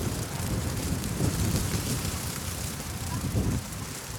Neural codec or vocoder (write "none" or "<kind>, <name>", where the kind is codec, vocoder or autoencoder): vocoder, BigVGAN v2